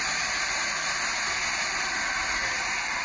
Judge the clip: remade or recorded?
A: recorded